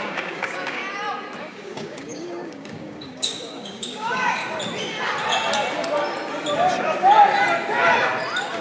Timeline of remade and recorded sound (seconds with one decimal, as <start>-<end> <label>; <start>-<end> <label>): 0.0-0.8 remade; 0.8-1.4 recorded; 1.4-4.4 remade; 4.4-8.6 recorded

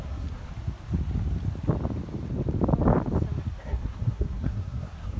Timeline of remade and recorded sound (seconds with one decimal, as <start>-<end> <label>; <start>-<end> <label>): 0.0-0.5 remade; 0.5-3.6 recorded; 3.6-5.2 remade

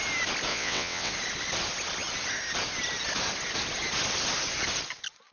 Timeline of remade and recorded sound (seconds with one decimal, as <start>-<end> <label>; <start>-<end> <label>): 0.0-0.5 recorded; 0.5-1.1 remade; 1.1-5.3 recorded